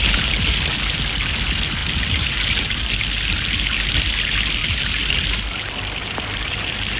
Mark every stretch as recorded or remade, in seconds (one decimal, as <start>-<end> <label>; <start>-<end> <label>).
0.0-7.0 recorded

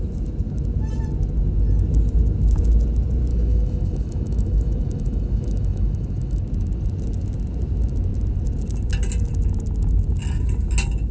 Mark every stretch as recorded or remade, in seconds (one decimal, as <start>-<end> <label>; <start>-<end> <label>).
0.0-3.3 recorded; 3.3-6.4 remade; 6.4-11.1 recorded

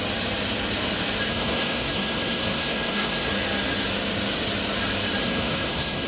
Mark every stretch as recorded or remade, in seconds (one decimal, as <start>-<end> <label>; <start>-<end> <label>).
0.0-1.3 recorded; 1.3-3.3 remade; 3.3-5.2 recorded; 5.2-6.1 remade

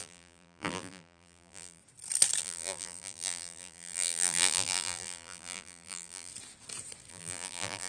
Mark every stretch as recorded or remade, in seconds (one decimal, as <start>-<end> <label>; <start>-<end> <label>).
0.0-1.8 remade; 1.8-2.4 recorded; 2.4-6.3 remade; 6.3-7.1 recorded; 7.1-7.9 remade